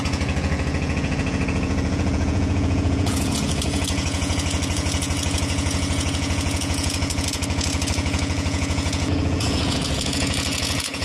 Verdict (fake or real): fake